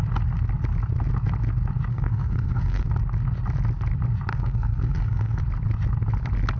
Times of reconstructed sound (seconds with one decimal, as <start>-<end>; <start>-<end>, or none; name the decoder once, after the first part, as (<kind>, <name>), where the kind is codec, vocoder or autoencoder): 1.9-2.9 (codec, SNAC); 4.3-5.4